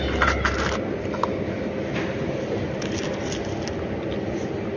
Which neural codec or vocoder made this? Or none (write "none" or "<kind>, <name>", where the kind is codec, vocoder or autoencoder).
none